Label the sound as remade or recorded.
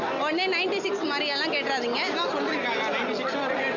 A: recorded